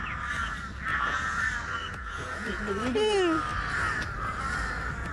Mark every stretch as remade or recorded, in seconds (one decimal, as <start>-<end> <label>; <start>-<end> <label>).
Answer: 0.0-0.9 recorded; 0.9-1.4 remade; 1.4-1.8 recorded; 1.8-2.6 remade; 2.6-5.1 recorded